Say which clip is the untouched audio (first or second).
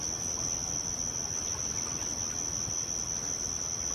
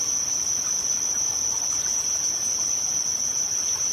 first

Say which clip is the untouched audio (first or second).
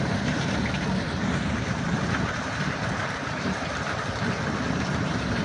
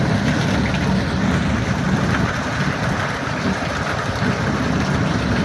second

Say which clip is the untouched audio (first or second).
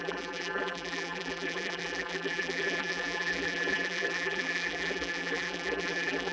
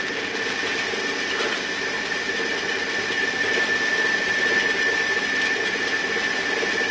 second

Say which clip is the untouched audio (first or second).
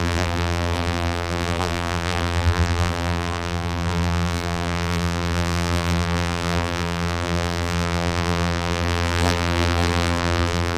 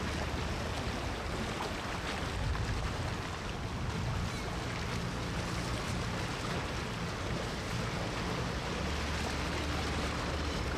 second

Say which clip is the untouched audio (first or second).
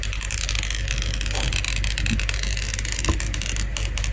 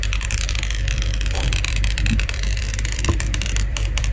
first